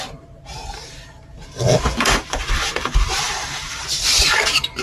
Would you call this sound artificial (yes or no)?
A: yes